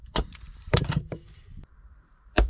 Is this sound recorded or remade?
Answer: remade